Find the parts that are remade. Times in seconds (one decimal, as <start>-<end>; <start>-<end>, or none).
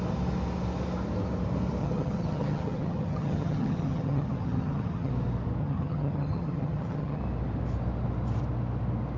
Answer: 1.8-5.1; 5.6-7.2